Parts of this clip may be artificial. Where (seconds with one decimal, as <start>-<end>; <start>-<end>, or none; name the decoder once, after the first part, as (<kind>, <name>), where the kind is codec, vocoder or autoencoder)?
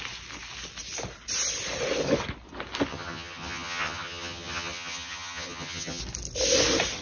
2.9-6.0 (vocoder, HiFi-GAN)